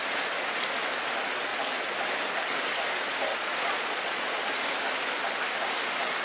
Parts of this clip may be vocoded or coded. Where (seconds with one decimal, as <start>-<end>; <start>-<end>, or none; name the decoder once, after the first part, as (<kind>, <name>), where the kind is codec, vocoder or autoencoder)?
3.3-4.4 (vocoder, Vocos)